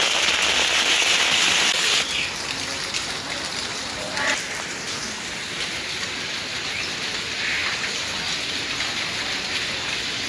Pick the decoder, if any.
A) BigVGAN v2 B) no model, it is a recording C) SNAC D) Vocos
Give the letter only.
B